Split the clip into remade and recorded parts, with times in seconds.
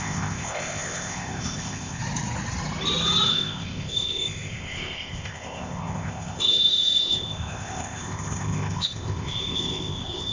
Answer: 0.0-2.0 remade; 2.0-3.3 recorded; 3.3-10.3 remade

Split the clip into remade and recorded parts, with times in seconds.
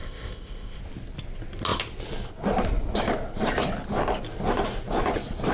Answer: 0.0-0.8 remade; 0.8-5.5 recorded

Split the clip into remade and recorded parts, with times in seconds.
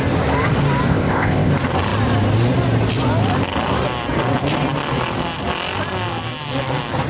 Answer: 0.0-0.9 recorded; 0.9-1.5 remade; 1.5-7.1 recorded